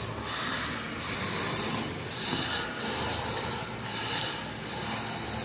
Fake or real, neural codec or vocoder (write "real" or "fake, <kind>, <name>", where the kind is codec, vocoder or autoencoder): real